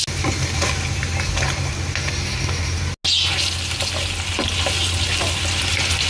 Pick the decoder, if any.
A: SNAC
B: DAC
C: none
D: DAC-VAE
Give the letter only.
C